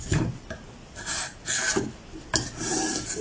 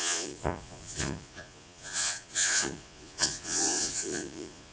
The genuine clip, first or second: first